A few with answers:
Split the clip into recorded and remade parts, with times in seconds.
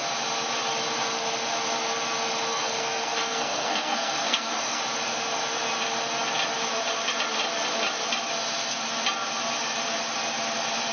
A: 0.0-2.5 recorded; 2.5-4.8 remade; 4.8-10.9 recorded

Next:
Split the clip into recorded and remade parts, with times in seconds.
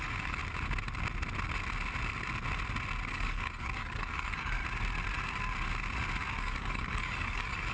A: 0.0-0.4 remade; 0.4-3.1 recorded; 3.1-4.6 remade; 4.6-6.4 recorded; 6.4-7.7 remade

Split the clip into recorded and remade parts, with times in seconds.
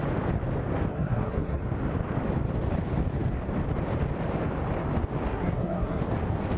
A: 0.0-0.9 recorded; 0.9-1.6 remade; 1.6-5.3 recorded; 5.3-6.0 remade; 6.0-6.6 recorded